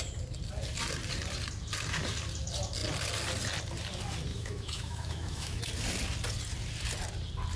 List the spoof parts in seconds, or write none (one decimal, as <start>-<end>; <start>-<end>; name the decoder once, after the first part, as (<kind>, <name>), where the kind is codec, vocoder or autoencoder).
4.3-5.6 (autoencoder, DAC-VAE)